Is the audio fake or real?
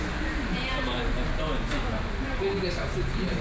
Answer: real